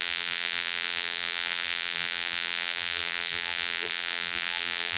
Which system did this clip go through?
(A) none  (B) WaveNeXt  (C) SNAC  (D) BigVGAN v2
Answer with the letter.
D